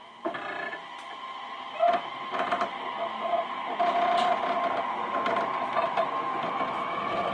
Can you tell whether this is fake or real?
real